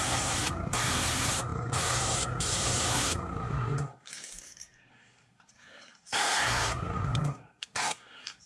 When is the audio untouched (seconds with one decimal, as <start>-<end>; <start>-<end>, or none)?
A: none